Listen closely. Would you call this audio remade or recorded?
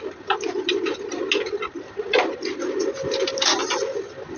recorded